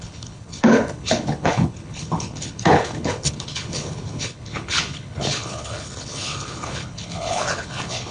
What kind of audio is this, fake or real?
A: fake